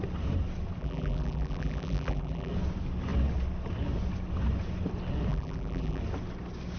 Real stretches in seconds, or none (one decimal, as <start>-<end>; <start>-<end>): 0.0-0.8; 2.5-5.3; 6.0-6.8